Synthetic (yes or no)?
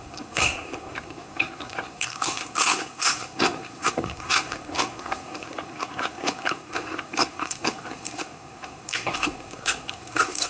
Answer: yes